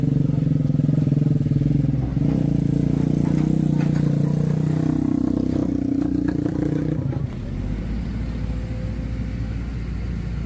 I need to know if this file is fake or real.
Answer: real